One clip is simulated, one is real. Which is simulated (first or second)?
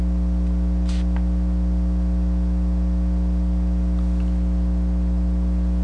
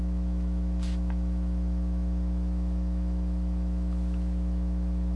second